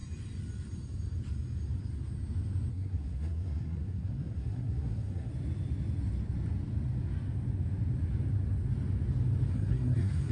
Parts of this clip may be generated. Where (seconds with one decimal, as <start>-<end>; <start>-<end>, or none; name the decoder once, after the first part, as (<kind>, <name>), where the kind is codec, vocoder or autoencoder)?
2.7-5.3 (codec, SNAC); 9.5-10.3